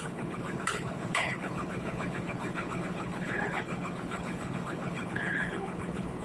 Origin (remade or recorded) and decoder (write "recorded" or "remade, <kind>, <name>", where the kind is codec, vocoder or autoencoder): remade, codec, HILCodec